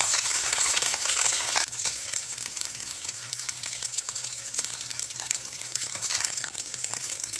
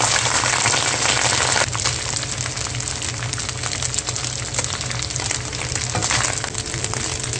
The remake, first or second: first